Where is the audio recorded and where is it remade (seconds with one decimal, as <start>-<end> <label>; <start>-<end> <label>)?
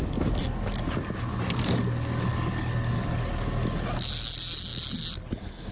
0.0-5.7 recorded